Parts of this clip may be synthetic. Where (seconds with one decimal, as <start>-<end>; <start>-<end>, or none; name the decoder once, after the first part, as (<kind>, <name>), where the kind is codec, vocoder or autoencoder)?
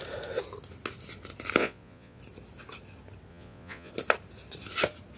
1.6-2.2 (vocoder, Vocos); 3.3-3.9